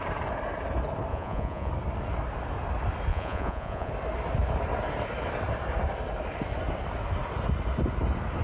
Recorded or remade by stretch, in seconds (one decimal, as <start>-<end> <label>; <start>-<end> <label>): 0.0-1.1 recorded; 1.1-1.7 remade; 1.7-3.1 recorded; 3.1-3.9 remade; 3.9-8.4 recorded